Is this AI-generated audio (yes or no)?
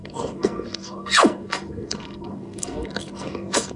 yes